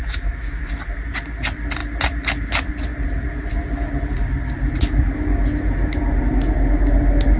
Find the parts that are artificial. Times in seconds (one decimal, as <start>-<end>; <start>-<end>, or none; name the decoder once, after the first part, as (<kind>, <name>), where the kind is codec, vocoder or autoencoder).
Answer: 0.0-0.6 (autoencoder, DAC-VAE)